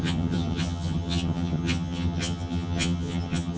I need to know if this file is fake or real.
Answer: fake